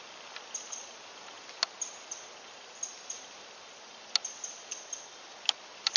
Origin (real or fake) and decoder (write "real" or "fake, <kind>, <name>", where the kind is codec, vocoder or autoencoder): real